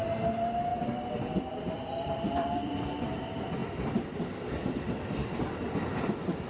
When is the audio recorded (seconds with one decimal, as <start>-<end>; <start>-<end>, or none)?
0.0-0.7; 2.7-6.5